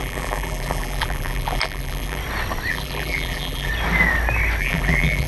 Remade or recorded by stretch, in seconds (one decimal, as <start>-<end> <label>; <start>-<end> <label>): 0.0-2.2 remade; 2.2-2.7 recorded; 2.7-3.7 remade; 3.7-4.6 recorded; 4.6-5.3 remade